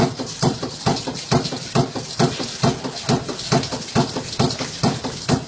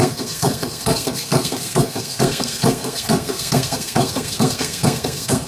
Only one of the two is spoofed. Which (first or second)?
second